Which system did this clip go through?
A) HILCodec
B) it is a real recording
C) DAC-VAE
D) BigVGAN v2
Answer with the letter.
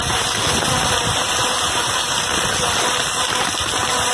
B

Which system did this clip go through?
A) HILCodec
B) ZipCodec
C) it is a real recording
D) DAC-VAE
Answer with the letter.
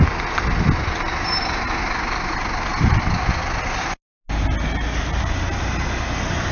C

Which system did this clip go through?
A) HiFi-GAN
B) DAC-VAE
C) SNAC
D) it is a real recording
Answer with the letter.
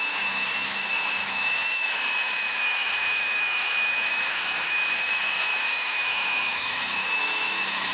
B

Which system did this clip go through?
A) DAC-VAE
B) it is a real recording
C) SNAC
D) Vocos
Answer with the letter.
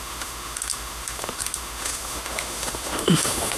A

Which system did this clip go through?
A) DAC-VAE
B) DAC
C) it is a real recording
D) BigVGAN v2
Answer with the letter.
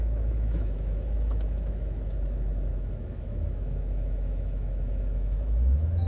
A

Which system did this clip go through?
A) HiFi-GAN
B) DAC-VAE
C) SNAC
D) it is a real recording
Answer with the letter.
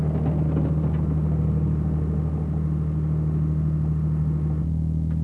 D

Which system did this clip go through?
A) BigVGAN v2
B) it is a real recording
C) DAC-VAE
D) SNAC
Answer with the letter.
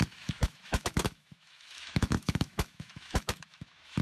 C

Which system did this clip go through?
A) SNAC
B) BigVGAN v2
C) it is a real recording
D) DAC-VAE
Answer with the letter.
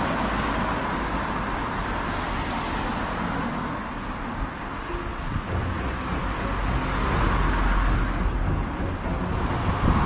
C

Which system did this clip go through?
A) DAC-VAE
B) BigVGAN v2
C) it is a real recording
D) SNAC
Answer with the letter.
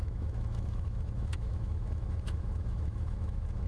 A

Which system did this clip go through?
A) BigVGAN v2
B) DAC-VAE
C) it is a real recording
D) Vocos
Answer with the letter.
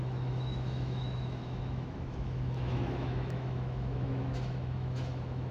B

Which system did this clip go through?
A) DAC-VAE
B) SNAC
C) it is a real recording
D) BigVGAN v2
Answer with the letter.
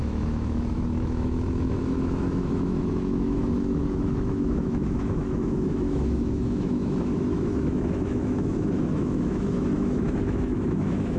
A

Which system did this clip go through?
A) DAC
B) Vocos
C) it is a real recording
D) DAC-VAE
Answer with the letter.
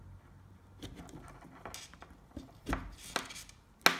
C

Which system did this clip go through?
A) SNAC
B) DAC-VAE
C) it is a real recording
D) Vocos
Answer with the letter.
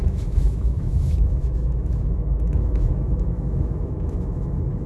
B